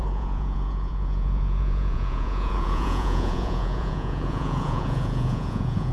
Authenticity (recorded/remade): remade